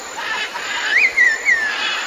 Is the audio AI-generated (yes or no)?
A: no